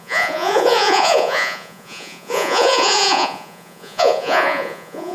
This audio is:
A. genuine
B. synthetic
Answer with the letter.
B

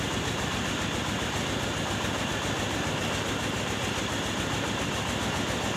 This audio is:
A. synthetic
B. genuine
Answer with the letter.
B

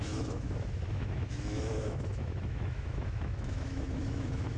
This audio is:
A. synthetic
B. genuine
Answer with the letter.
A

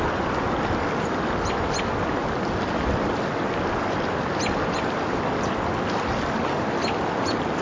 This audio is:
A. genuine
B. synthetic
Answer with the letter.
A